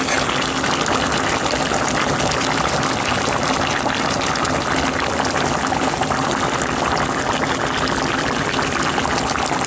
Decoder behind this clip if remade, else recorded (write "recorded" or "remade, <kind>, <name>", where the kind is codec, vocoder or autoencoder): recorded